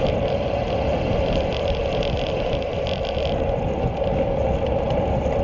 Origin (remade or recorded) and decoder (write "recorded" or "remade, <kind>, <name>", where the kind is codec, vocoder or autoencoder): recorded